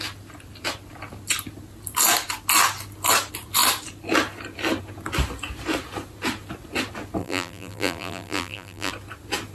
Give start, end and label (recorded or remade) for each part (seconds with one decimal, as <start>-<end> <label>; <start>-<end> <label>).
0.0-7.2 recorded; 7.2-8.9 remade; 8.9-9.5 recorded

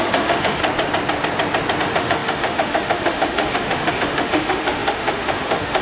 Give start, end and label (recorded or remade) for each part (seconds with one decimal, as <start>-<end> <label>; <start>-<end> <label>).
0.0-0.6 remade; 0.6-1.8 recorded; 1.8-5.8 remade

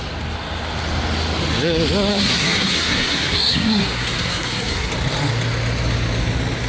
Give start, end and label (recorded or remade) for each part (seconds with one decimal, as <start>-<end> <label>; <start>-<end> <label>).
0.0-2.1 recorded; 2.1-4.9 remade; 4.9-6.7 recorded

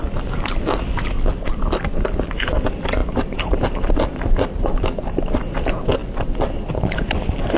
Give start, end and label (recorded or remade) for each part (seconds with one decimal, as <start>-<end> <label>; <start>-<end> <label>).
0.0-3.0 recorded; 3.0-3.9 remade; 3.9-7.6 recorded

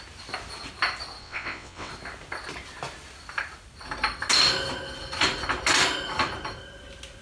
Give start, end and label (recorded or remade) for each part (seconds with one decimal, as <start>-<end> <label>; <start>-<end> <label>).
0.0-1.2 recorded; 1.2-1.9 remade; 1.9-7.2 recorded

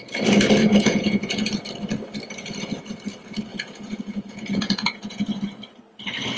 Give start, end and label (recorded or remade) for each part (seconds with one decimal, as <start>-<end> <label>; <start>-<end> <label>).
0.0-0.6 recorded; 0.6-1.5 remade; 1.5-3.5 recorded; 3.5-5.2 remade; 5.2-6.4 recorded

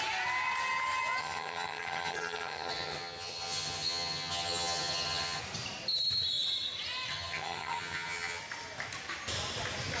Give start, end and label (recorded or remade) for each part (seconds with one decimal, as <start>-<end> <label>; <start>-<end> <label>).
0.0-1.2 recorded; 1.2-5.4 remade; 5.4-7.1 recorded; 7.1-8.4 remade; 8.4-10.0 recorded